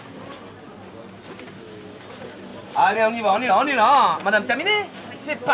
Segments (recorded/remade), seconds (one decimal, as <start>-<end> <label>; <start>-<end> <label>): 0.0-2.5 recorded; 2.5-3.5 remade; 3.5-5.5 recorded